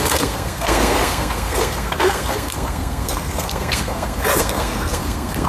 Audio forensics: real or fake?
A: fake